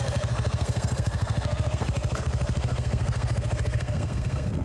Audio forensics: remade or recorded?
remade